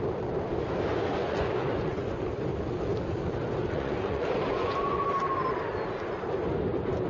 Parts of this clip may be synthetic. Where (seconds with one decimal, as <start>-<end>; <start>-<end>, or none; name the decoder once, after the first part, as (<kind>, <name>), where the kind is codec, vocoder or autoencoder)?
1.2-2.2 (vocoder, Vocos); 3.6-5.0